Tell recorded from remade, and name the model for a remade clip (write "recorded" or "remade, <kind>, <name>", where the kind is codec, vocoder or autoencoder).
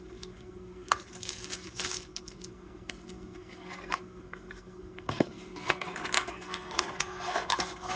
remade, codec, SNAC